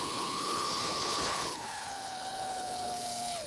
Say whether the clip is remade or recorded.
remade